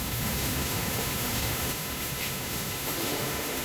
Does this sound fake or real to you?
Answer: fake